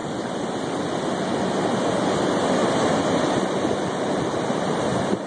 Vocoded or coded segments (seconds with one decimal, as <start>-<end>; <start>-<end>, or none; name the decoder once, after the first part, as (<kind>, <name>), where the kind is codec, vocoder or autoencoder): none